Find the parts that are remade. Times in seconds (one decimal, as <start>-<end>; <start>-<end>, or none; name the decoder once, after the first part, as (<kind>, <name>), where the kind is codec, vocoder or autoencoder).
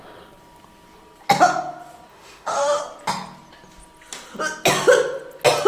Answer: 2.1-2.8 (autoencoder, DAC-VAE)